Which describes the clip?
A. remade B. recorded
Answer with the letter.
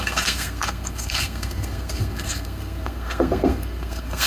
A